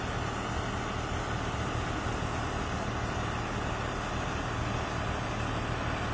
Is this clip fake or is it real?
real